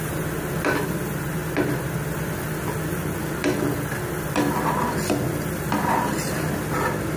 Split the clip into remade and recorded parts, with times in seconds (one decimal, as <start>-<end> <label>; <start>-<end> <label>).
0.0-7.2 recorded